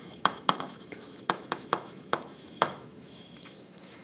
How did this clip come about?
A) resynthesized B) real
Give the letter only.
A